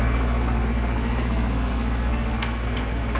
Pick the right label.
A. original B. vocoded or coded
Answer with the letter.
B